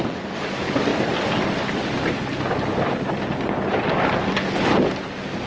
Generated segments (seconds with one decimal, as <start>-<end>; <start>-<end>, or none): none